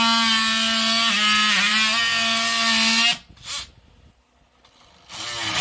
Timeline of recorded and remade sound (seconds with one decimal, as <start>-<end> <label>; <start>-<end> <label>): 0.0-5.6 recorded